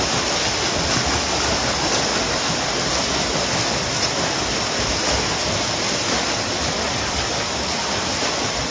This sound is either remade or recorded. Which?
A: recorded